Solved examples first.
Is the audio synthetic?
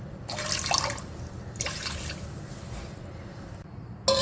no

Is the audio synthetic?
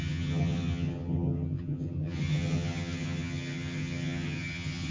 yes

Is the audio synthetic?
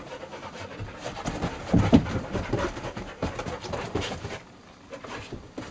no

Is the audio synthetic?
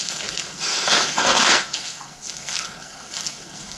yes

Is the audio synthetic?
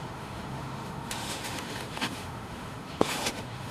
yes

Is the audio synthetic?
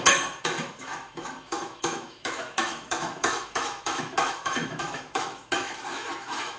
yes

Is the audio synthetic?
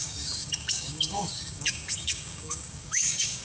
yes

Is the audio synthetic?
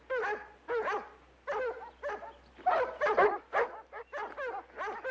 no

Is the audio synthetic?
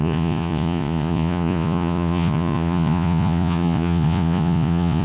yes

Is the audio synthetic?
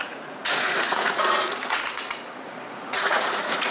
yes